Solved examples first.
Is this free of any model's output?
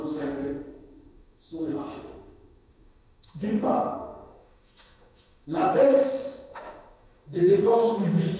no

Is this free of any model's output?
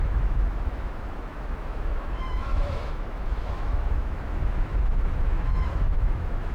no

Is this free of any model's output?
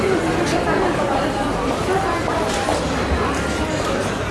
yes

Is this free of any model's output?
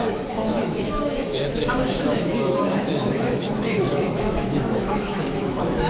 no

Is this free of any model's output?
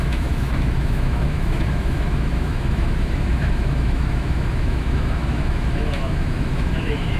no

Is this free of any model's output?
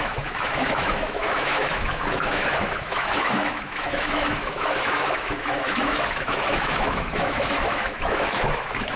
no